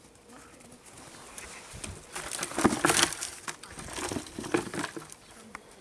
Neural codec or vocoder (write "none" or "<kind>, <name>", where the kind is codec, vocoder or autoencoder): none